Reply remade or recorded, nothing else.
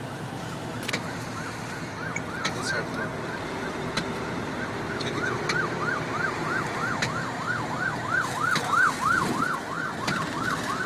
remade